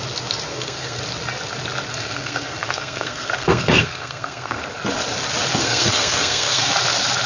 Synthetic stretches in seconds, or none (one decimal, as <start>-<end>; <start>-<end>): 0.5-1.0; 1.9-4.6; 5.6-6.7